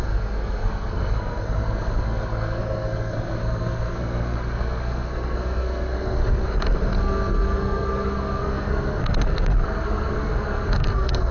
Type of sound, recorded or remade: remade